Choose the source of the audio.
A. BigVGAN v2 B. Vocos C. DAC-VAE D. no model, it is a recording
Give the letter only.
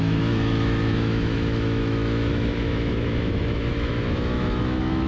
C